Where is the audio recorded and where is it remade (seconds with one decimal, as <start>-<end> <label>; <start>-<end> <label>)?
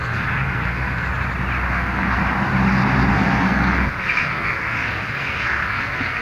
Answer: 0.0-1.1 remade; 1.1-1.7 recorded; 1.7-2.2 remade; 2.2-3.1 recorded; 3.1-6.2 remade